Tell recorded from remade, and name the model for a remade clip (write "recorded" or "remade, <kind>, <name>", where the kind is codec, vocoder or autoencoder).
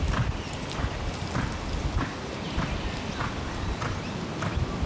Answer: recorded